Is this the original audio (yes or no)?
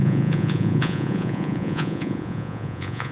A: no